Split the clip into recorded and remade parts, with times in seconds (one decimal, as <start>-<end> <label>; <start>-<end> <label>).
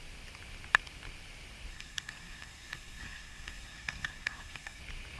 0.0-1.7 recorded; 1.7-4.8 remade; 4.8-5.2 recorded